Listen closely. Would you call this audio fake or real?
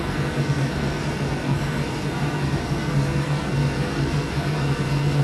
fake